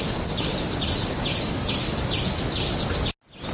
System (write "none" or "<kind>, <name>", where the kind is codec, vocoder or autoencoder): none